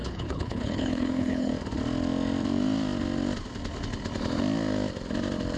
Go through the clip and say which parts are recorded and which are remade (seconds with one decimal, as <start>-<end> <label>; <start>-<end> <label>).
0.0-1.5 remade; 1.5-5.6 recorded